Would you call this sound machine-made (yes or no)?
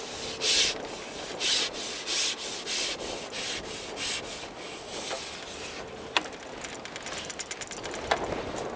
no